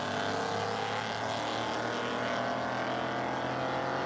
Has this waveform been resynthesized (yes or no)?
no